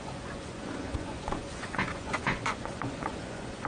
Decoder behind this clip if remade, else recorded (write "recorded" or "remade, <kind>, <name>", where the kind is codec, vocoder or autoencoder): remade, vocoder, Vocos